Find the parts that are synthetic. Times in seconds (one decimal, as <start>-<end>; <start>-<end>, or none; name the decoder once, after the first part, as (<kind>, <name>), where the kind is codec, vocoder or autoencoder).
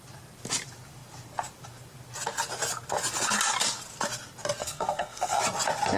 4.6-5.4 (codec, SNAC)